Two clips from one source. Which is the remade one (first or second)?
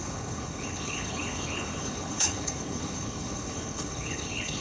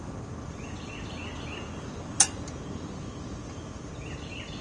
first